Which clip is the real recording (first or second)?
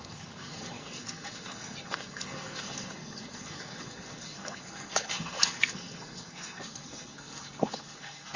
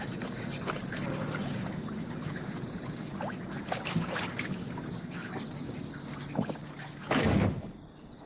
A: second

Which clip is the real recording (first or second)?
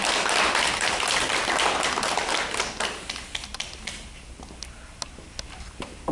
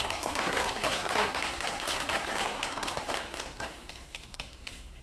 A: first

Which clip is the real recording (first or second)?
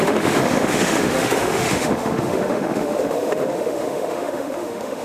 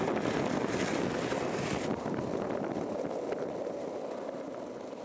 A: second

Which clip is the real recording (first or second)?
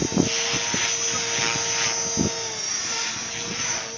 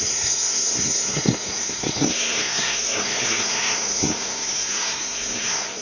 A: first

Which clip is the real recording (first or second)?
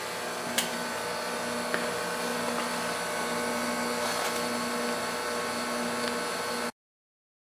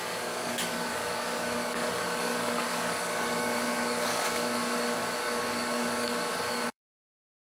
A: first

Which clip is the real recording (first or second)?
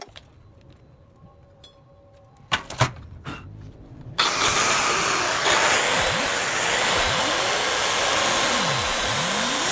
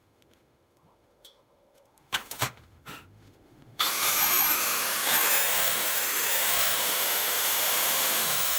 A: first